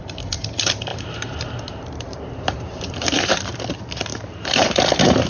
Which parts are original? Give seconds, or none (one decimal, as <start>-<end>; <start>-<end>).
0.0-0.9; 3.4-4.1